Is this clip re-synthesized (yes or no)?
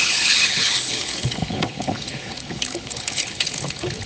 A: yes